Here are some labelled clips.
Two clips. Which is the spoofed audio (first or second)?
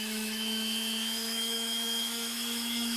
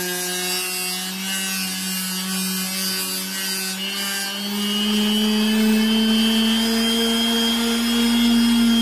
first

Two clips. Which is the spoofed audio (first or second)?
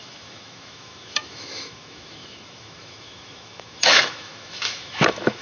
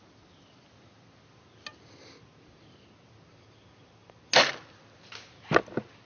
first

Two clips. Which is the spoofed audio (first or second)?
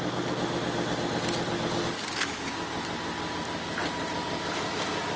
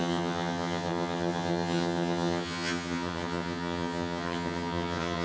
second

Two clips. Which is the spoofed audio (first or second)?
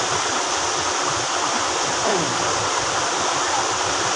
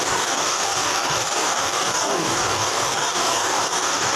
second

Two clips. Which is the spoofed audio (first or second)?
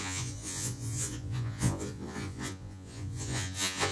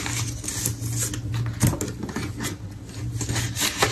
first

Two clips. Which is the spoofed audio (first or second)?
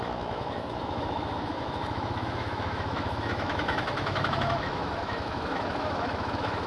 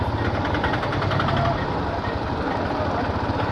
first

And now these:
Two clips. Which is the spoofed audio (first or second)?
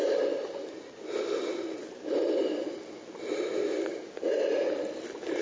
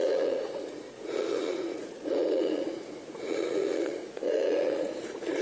second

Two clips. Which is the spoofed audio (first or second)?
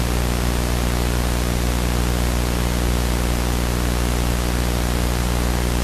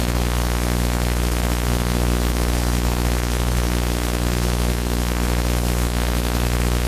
second